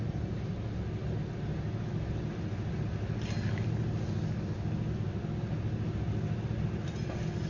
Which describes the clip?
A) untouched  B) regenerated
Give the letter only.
A